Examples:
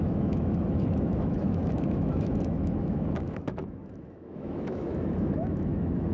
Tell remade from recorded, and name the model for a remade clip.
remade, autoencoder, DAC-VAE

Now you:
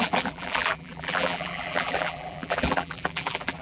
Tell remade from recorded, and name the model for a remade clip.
remade, vocoder, BigVGAN v2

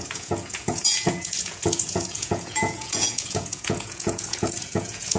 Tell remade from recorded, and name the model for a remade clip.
remade, vocoder, Vocos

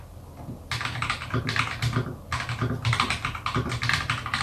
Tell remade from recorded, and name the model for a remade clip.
recorded